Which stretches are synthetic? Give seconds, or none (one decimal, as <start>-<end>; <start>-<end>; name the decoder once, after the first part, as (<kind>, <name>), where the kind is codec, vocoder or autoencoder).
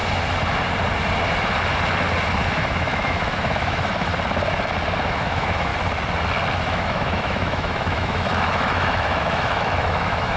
2.6-4.1 (autoencoder, DAC-VAE); 5.1-5.7; 6.6-10.4